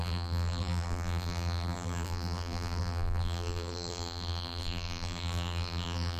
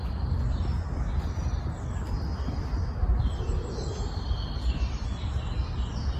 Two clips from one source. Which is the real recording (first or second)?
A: second